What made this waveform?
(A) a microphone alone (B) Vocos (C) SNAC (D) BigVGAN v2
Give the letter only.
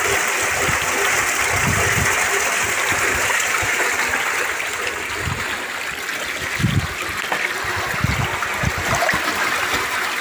A